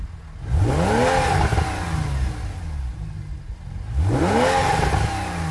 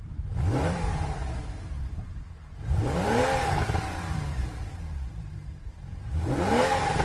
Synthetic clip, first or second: second